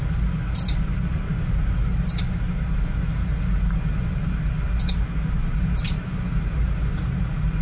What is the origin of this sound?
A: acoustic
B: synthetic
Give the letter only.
A